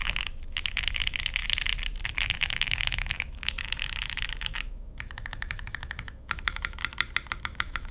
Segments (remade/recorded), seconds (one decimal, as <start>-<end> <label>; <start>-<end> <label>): 0.0-1.4 remade; 1.4-2.2 recorded; 2.2-6.8 remade; 6.8-7.4 recorded; 7.4-7.9 remade